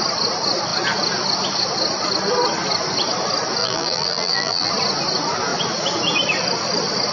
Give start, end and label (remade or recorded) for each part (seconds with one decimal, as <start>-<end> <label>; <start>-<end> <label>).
0.0-3.6 recorded; 3.6-4.7 remade; 4.7-7.1 recorded